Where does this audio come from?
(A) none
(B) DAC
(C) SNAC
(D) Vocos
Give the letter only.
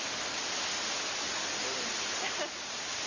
A